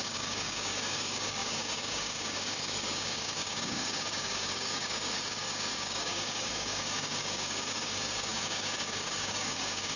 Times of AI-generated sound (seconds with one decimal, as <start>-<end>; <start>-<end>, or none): 0.0-10.0

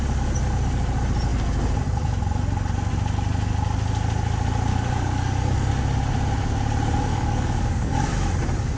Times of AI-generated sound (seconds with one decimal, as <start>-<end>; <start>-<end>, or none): 4.7-5.7; 7.1-7.9

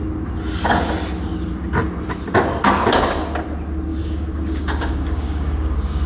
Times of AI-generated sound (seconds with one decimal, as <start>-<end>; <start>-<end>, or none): 3.9-6.1